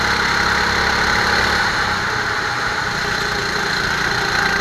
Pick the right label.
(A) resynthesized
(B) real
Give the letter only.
B